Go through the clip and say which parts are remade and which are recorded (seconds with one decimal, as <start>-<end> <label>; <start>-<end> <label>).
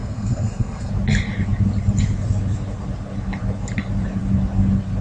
0.0-0.9 remade; 0.9-5.0 recorded